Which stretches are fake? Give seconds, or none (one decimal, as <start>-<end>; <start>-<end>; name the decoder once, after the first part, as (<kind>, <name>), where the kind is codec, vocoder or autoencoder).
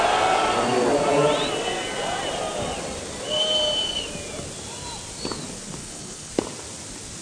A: 5.8-6.3 (codec, HILCodec)